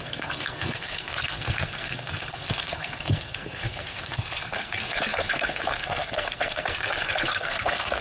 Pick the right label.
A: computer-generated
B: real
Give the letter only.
A